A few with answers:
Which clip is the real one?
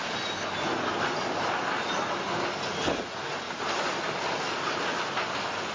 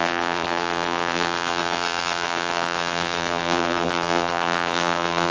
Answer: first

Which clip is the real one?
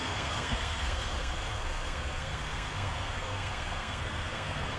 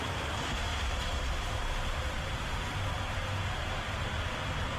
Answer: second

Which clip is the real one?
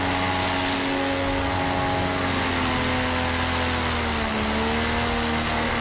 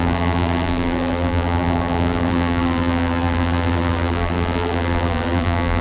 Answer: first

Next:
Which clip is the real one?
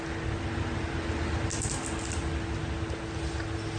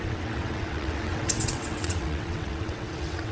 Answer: first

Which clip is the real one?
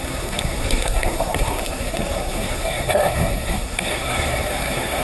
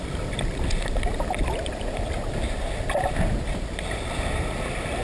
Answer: second